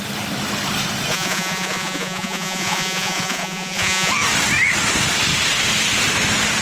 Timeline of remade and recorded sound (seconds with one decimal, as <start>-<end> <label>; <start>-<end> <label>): 0.0-1.1 recorded; 1.1-4.1 remade; 4.1-6.6 recorded